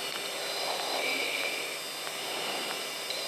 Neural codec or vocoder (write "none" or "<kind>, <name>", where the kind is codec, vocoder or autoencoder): none